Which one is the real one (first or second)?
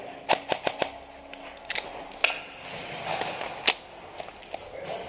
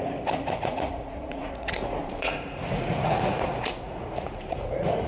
first